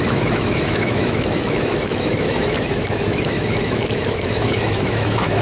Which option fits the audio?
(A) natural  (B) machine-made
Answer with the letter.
B